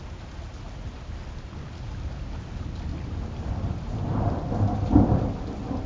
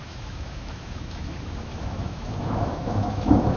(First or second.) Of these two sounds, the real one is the first